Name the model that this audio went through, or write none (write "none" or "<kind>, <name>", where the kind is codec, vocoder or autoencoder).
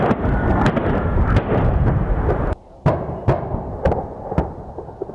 none